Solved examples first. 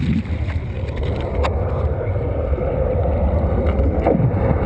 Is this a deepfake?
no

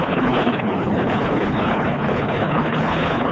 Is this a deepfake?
yes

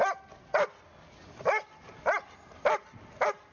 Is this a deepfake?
no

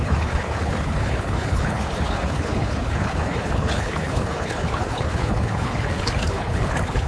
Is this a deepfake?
yes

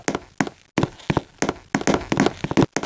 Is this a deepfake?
no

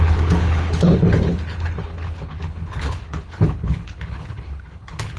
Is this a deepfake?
yes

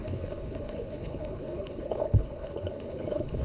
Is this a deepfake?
yes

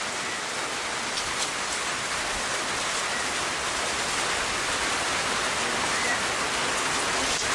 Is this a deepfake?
no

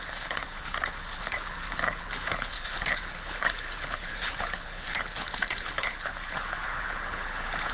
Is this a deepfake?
yes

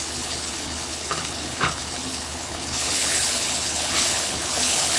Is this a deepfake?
yes